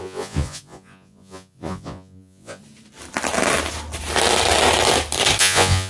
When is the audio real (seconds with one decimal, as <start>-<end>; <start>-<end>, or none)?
2.6-5.4